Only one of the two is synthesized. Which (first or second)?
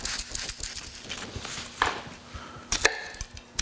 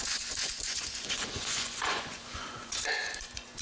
second